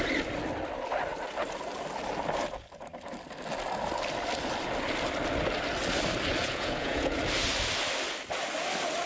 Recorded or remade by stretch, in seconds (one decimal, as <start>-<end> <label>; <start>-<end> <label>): 0.0-6.4 recorded; 6.4-7.2 remade; 7.2-9.1 recorded